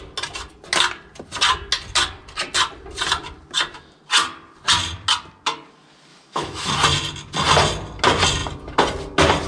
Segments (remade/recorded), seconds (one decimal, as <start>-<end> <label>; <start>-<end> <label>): 0.0-6.1 recorded; 6.1-6.7 remade; 6.7-9.5 recorded